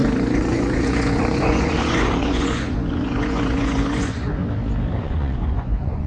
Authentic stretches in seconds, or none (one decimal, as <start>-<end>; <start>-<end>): 4.4-5.0